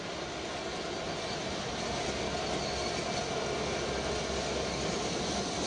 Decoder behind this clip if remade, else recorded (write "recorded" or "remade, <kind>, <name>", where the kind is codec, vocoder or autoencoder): recorded